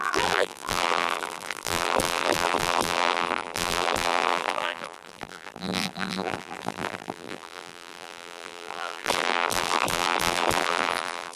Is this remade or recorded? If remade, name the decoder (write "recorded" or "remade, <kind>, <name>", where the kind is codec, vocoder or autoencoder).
remade, vocoder, BigVGAN v2